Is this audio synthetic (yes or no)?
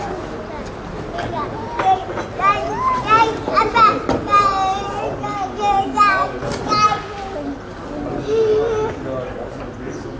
no